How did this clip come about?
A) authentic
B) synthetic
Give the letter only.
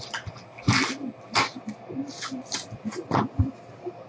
A